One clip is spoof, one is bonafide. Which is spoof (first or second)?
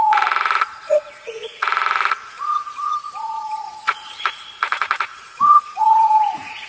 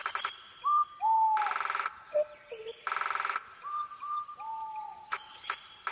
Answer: first